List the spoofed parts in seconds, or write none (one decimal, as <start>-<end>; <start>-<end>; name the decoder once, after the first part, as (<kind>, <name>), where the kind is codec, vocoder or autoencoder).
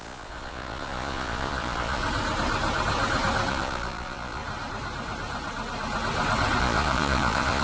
0.0-2.0 (vocoder, Vocos); 3.5-4.4; 6.6-7.6